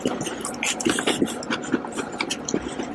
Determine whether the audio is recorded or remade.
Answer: recorded